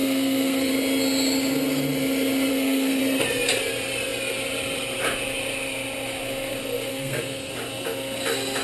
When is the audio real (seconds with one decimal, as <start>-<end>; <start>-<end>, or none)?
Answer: 0.7-2.5; 3.0-6.9; 7.5-8.6